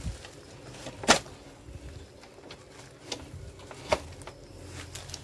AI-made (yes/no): no